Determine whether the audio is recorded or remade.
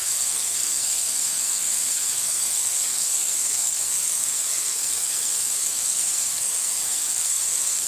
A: remade